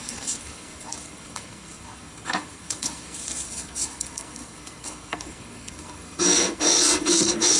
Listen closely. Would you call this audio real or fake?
fake